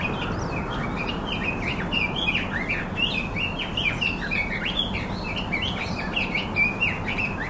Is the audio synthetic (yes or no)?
no